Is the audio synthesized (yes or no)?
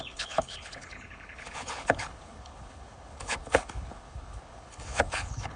yes